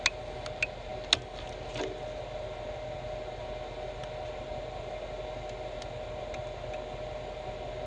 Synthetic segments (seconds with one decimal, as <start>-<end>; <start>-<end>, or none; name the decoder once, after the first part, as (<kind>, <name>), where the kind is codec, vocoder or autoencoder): none